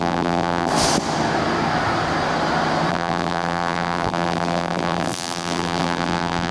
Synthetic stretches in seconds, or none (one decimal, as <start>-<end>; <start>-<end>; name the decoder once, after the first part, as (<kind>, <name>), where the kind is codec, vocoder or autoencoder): 0.0-0.7 (vocoder, BigVGAN v2); 2.9-6.5